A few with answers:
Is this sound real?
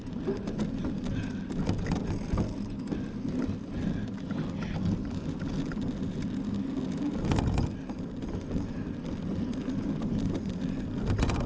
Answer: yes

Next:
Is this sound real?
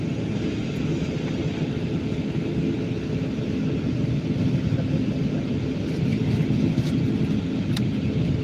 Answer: yes